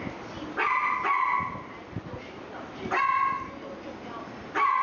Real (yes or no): yes